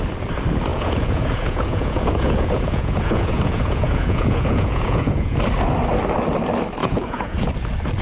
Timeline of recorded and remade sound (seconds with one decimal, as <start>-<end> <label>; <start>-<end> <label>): 0.0-0.7 recorded; 0.7-5.4 remade; 5.4-6.8 recorded; 6.8-7.5 remade; 7.5-8.0 recorded